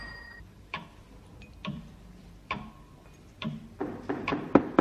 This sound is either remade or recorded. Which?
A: remade